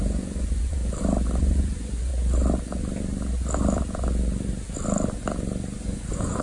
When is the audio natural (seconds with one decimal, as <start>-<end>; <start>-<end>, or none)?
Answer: 0.8-1.4; 2.1-5.8